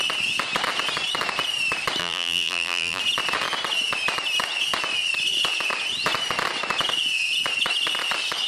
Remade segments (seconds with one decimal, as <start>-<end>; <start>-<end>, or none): 2.0-3.0